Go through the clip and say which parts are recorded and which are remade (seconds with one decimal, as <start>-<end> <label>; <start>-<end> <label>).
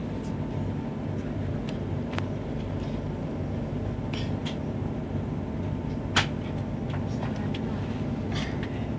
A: 0.0-9.0 recorded